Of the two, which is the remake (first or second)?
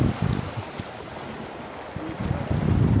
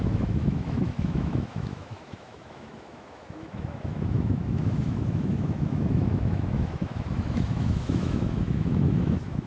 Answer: second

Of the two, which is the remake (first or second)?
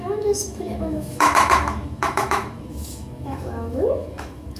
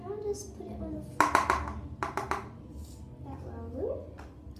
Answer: first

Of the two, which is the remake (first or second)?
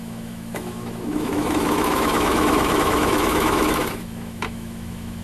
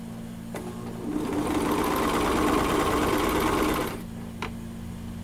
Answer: first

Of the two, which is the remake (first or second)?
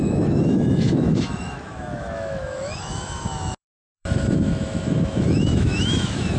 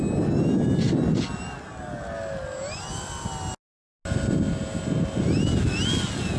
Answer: first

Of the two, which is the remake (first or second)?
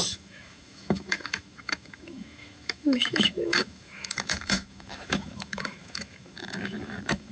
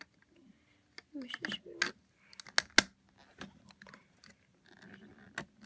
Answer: first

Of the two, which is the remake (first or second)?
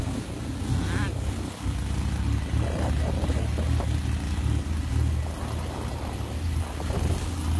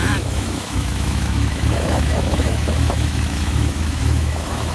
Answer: second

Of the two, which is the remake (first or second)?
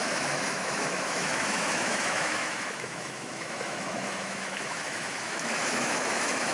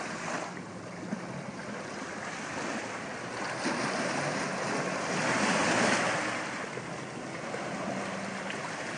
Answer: first